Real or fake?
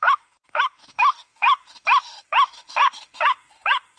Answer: fake